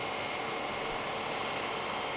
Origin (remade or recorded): recorded